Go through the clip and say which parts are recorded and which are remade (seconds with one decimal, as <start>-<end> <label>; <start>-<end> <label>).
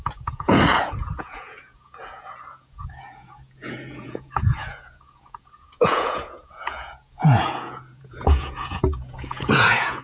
0.0-10.0 remade